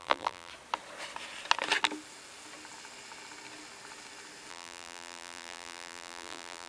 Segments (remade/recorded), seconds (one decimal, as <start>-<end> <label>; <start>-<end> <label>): 0.0-0.5 remade; 0.5-4.5 recorded; 4.5-6.7 remade